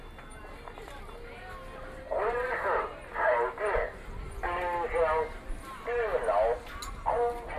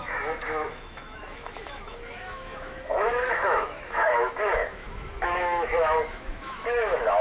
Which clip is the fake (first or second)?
second